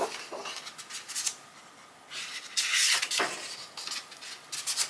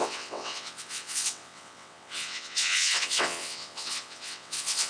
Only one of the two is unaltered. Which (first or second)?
first